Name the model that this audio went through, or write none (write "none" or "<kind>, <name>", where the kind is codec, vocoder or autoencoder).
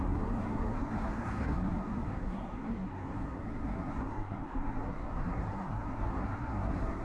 codec, SNAC